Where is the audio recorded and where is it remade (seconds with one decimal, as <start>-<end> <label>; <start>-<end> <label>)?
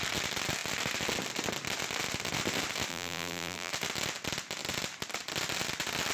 0.0-2.9 recorded; 2.9-3.7 remade; 3.7-6.1 recorded